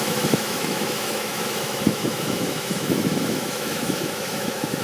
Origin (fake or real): fake